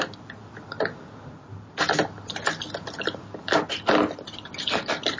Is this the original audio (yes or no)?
yes